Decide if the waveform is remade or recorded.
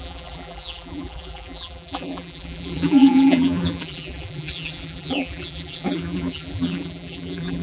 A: remade